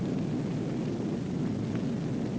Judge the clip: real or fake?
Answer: real